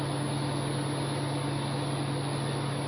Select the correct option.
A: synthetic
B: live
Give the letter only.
B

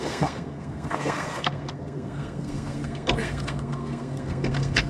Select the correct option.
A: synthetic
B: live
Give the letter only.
A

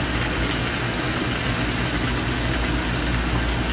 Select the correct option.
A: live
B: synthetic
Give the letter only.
A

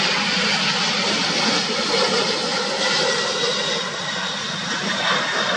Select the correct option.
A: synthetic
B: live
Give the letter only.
B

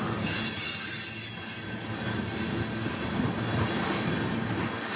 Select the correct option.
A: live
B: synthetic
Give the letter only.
A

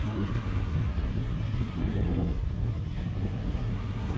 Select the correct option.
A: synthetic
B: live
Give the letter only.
A